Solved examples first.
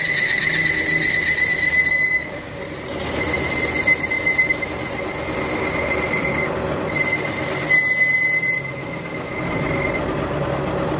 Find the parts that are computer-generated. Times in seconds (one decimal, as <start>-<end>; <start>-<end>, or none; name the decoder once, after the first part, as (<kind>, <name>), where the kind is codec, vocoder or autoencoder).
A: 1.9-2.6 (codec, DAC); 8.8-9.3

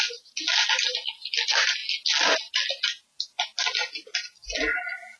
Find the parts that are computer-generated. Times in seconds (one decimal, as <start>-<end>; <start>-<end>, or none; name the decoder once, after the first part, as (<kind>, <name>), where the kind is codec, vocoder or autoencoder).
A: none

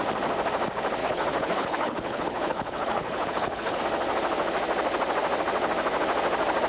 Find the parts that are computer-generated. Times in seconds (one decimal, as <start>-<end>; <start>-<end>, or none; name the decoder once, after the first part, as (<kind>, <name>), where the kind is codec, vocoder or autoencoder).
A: 1.0-3.8 (codec, HILCodec)